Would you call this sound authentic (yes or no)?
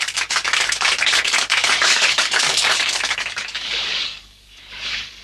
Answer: no